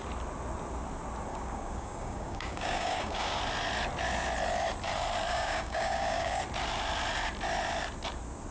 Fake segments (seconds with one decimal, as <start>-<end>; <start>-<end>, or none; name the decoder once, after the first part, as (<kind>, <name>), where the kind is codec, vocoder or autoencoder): 1.3-3.4 (codec, DAC); 5.3-6.4